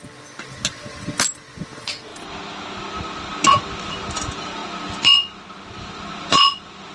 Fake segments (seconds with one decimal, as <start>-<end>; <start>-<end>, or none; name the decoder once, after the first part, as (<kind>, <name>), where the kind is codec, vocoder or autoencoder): none